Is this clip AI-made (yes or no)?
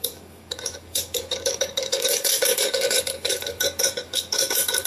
yes